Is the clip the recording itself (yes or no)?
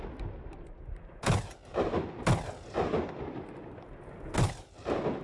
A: yes